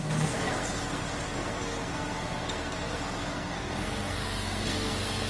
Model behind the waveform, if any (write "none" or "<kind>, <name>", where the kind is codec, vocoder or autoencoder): codec, SNAC